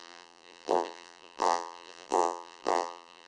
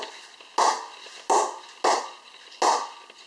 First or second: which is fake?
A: first